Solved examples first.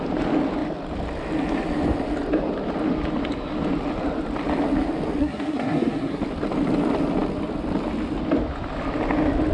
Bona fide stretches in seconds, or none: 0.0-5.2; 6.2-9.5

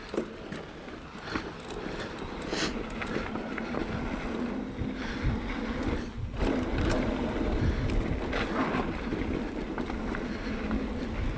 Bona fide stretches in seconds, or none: 0.0-11.4

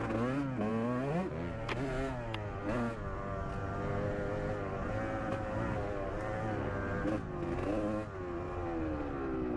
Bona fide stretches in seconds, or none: 0.0-9.6

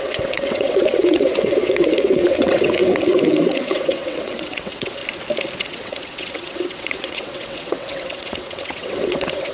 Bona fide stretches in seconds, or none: 5.0-5.6

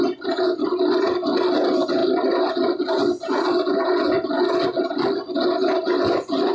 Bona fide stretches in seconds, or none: 0.0-6.5

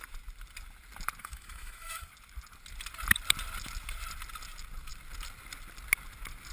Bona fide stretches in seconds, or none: 0.0-1.2; 2.1-6.5

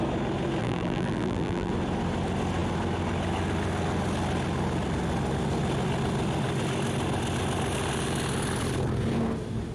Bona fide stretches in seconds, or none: 0.0-0.6; 1.7-9.7

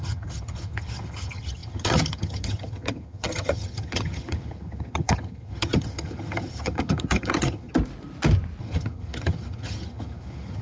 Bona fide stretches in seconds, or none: 7.7-8.6